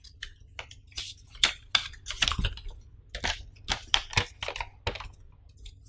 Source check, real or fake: real